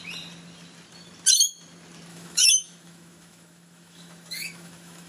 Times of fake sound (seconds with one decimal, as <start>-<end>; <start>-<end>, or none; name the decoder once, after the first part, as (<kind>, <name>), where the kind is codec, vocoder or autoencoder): 2.1-5.1 (autoencoder, DAC-VAE)